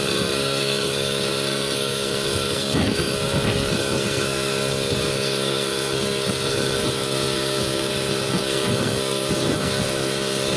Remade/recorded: remade